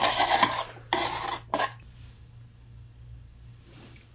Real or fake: real